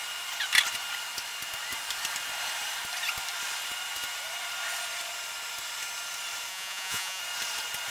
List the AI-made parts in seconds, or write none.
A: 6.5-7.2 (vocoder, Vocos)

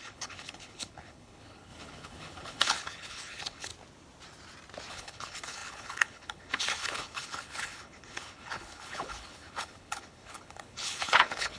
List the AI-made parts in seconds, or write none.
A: 0.0-3.7 (codec, HILCodec); 4.9-11.6

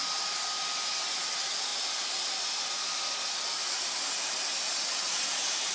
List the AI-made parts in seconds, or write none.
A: none

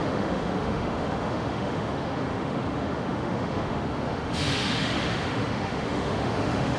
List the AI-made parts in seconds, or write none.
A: 0.0-6.8 (autoencoder, DAC-VAE)

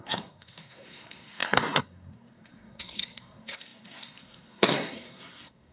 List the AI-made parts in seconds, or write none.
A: 0.0-5.7 (codec, SNAC)

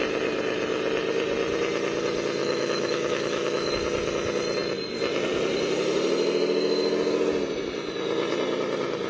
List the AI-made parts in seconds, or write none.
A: 2.4-3.7 (autoencoder, DAC-VAE)

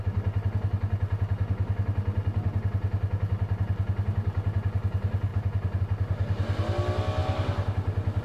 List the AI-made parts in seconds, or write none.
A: 5.3-5.8 (vocoder, BigVGAN v2)

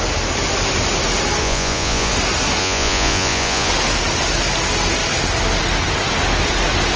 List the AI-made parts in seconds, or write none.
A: 1.4-2.1 (vocoder, Vocos); 2.6-3.7